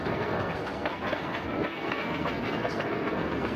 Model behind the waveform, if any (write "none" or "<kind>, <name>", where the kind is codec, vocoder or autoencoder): codec, SNAC